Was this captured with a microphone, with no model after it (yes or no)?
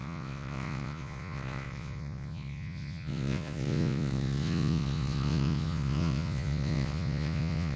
no